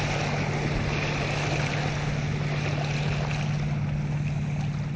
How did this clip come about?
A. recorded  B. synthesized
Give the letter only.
A